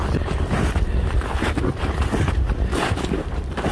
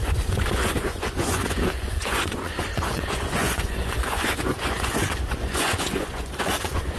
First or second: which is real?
first